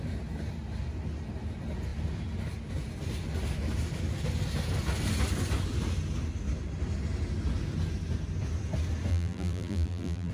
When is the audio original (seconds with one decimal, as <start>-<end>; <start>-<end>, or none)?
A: 0.0-9.1